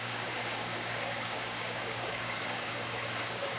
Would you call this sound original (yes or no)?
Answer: no